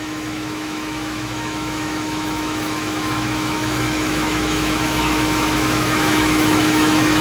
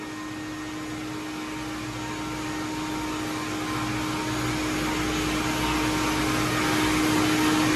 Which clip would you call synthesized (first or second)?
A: first